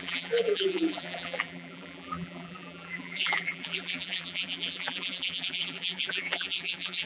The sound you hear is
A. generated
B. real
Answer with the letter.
A